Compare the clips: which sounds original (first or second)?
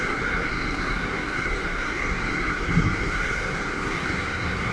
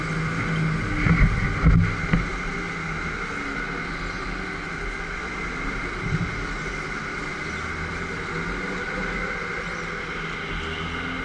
second